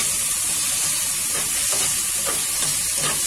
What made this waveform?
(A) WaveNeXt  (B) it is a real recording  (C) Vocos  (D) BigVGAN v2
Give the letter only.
B